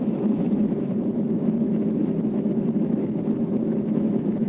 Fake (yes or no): yes